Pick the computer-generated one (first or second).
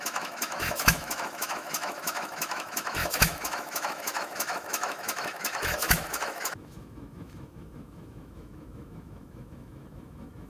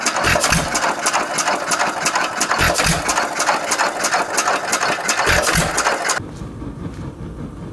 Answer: first